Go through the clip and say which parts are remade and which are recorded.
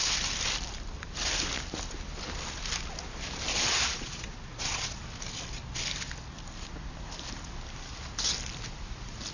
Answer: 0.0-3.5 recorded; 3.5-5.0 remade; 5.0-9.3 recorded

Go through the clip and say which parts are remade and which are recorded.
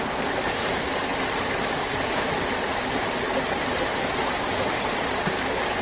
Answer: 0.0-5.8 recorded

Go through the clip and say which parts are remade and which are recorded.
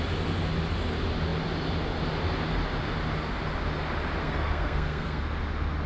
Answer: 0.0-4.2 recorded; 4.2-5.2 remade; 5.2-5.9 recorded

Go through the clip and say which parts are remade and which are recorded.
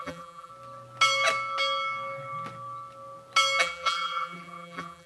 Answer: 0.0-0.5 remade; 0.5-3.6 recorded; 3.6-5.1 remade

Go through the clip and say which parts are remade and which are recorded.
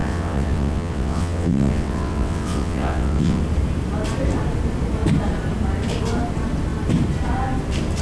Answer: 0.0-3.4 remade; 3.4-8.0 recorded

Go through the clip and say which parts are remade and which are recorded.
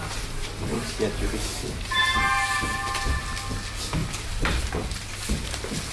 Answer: 0.0-4.0 recorded; 4.0-4.6 remade; 4.6-5.9 recorded